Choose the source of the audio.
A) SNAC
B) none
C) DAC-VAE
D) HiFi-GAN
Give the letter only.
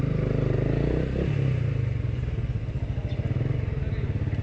B